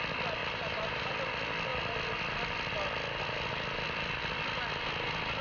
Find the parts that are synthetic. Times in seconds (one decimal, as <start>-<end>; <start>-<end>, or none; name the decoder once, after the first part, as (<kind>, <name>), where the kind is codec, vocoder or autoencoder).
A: 0.4-1.1 (vocoder, BigVGAN v2)